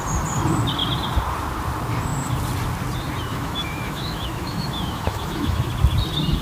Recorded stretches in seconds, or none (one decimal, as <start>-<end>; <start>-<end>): 0.0-3.3; 5.7-6.4